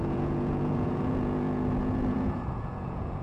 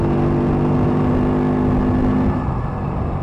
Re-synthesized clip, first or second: first